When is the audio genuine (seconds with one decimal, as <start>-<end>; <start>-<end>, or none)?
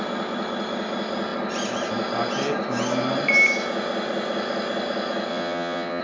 0.0-5.3